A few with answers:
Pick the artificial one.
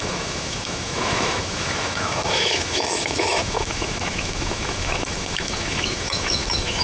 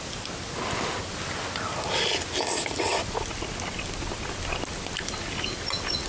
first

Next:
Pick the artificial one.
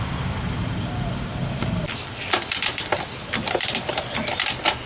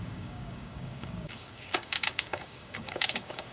second